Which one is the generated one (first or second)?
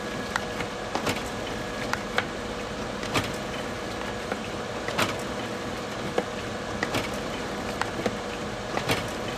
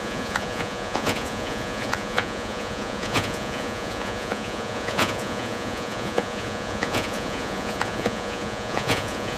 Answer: second